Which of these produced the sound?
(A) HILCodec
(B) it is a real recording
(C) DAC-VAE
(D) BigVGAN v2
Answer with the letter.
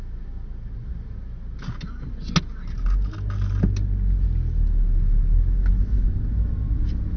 B